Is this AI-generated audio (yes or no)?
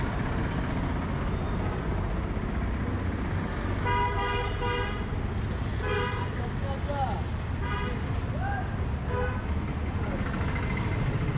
no